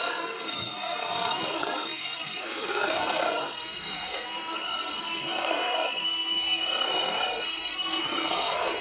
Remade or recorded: remade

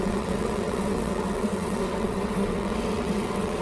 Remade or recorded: remade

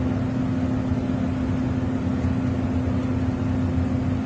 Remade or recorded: recorded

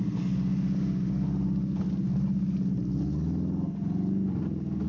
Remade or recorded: recorded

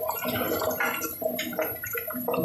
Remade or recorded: remade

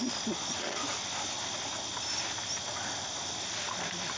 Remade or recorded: recorded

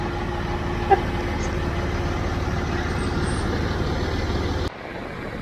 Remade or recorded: recorded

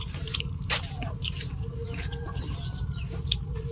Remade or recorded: remade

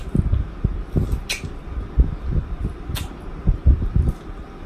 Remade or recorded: recorded